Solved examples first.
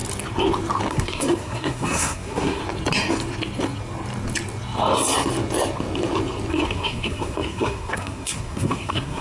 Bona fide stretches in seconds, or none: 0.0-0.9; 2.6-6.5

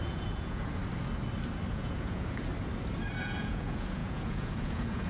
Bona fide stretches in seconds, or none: 0.8-1.7; 2.5-3.2

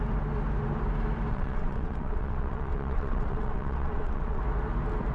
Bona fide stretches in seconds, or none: 0.0-1.3; 4.4-5.1

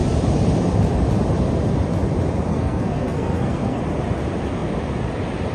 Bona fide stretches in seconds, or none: 0.0-2.5; 3.8-5.5

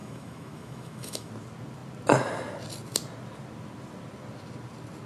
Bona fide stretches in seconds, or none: 1.3-5.1

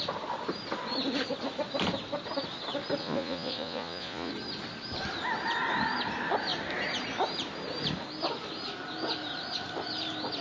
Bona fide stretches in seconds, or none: 0.0-3.0; 4.3-10.4